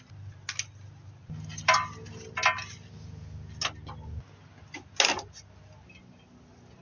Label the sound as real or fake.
real